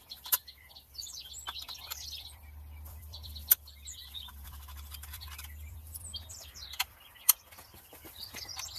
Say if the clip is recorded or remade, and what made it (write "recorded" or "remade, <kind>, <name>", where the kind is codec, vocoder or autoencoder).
remade, vocoder, BigVGAN v2